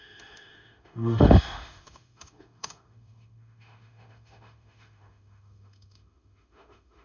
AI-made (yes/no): yes